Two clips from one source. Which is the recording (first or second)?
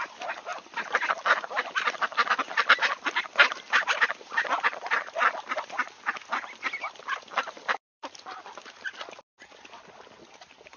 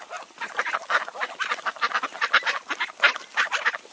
second